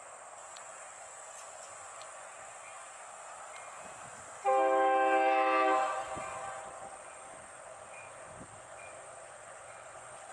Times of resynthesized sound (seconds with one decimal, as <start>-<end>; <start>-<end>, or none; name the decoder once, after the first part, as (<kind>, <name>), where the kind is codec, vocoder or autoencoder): 0.4-3.0 (vocoder, Vocos); 5.8-10.3